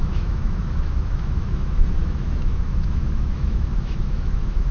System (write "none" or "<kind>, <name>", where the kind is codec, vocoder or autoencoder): autoencoder, DAC-VAE